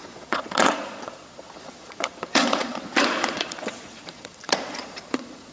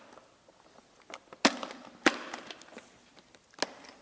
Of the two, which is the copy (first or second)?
first